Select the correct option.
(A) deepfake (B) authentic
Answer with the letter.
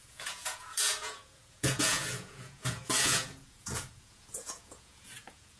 A